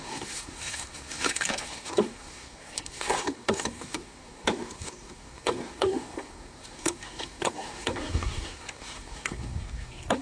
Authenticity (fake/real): fake